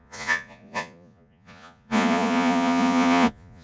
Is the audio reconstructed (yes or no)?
yes